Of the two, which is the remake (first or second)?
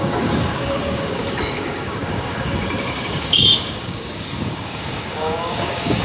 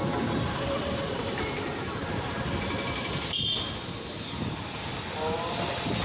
first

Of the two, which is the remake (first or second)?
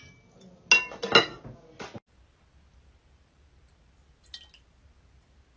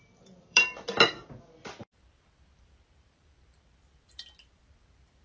second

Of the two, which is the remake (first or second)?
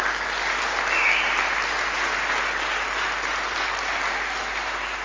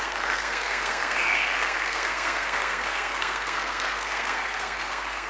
second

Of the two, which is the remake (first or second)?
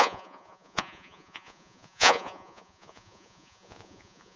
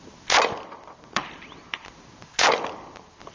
first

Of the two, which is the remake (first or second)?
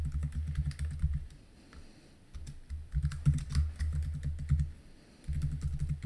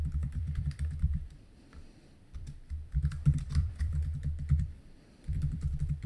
second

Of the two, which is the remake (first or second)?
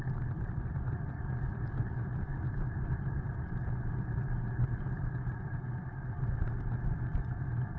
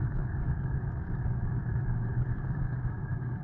second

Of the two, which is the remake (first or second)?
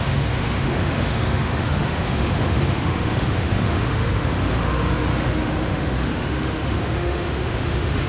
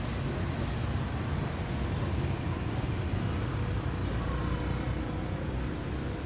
first